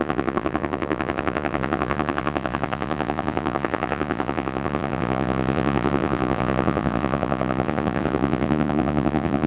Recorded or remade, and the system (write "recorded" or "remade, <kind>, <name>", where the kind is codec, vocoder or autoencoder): remade, vocoder, Vocos